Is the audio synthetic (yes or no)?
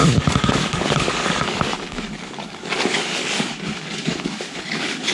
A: yes